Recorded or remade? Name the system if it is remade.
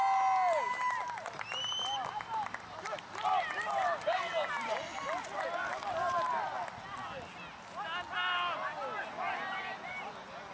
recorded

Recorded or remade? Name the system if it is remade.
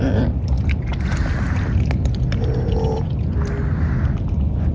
recorded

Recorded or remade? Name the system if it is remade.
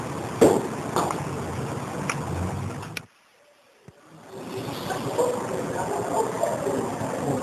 recorded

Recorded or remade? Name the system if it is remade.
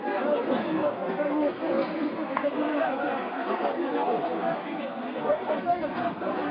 remade, codec, SNAC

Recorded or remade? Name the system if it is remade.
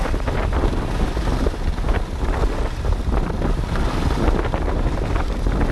recorded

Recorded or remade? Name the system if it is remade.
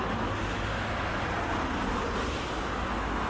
recorded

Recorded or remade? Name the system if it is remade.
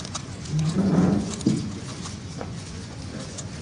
remade, vocoder, Vocos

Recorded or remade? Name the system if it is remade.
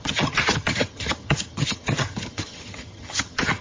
remade, vocoder, HiFi-GAN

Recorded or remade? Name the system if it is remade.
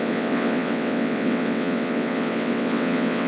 remade, vocoder, WaveNeXt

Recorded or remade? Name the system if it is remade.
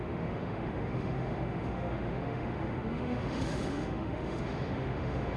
remade, autoencoder, DAC-VAE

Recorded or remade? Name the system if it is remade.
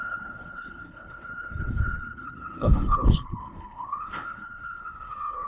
remade, codec, HILCodec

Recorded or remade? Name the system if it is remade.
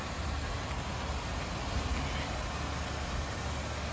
recorded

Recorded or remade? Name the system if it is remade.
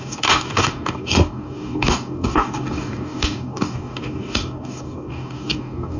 remade, codec, DAC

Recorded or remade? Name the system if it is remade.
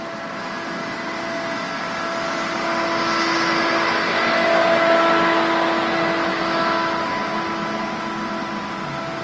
recorded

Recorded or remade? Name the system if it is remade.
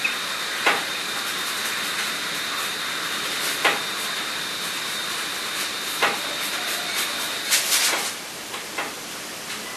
remade, vocoder, BigVGAN v2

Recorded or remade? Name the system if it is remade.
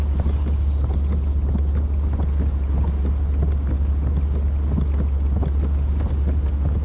recorded